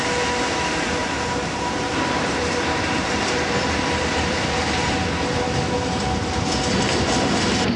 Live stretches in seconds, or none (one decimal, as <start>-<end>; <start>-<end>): 0.0-1.0; 4.9-7.8